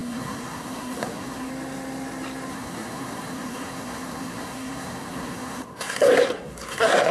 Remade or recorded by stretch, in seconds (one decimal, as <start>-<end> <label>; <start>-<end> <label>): 0.0-1.5 remade; 1.5-2.5 recorded; 2.5-7.1 remade